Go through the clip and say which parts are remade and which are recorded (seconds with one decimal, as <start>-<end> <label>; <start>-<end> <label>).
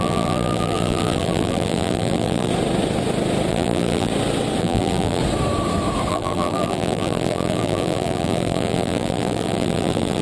0.0-2.5 remade; 2.5-3.5 recorded; 3.5-4.1 remade; 4.1-4.6 recorded; 4.6-5.2 remade; 5.2-6.1 recorded; 6.1-10.2 remade